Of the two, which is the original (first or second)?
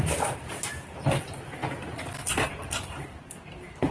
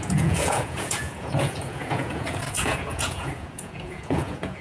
first